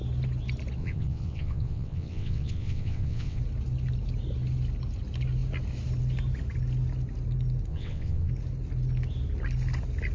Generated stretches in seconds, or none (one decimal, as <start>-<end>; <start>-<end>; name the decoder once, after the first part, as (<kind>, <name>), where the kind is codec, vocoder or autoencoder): 0.8-3.4 (vocoder, WaveNeXt); 7.7-8.3